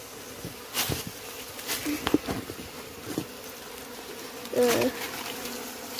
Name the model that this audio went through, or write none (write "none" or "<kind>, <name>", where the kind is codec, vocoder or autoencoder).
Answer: none